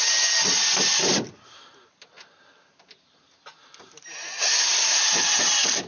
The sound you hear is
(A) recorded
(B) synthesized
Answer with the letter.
A